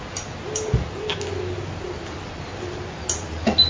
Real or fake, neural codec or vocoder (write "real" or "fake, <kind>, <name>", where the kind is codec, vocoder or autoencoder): real